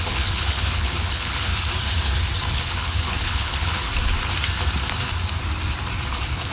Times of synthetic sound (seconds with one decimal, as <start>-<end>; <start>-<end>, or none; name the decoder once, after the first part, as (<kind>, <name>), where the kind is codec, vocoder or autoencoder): 0.0-1.5 (codec, HILCodec); 2.5-3.9; 6.1-6.5